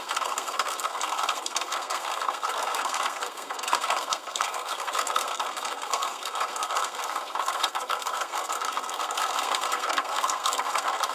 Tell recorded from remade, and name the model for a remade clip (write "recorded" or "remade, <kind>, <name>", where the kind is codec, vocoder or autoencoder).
remade, codec, SNAC